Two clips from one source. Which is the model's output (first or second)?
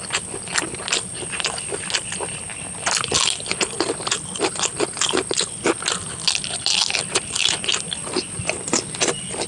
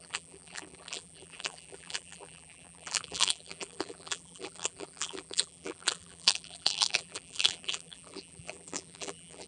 second